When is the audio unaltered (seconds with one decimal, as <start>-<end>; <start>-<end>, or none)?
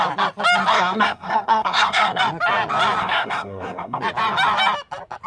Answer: 0.0-0.7; 2.2-3.0; 4.0-5.3